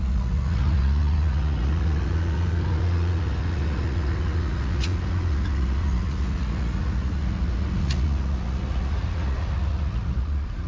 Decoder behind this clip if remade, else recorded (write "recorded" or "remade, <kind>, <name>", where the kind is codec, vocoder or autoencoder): remade, vocoder, Vocos